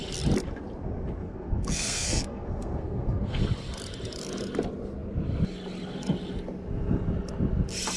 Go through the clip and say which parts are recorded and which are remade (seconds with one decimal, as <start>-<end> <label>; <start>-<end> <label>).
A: 0.0-1.2 recorded; 1.2-3.4 remade; 3.4-8.0 recorded